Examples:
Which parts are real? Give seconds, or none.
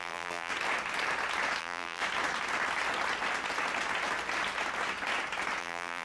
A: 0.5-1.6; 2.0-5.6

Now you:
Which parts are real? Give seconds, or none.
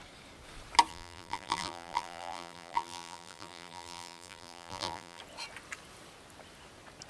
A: 0.0-0.9; 5.2-7.1